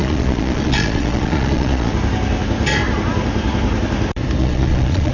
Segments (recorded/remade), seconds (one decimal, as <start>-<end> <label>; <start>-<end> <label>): 0.0-1.9 remade; 1.9-4.4 recorded; 4.4-5.1 remade